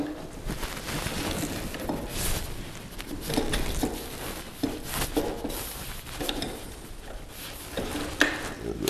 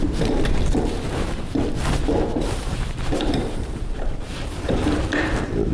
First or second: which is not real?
second